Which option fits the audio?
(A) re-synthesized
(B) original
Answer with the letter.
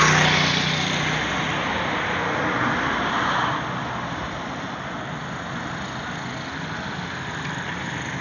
B